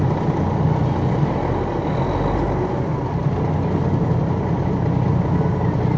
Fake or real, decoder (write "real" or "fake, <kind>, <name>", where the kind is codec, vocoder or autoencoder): real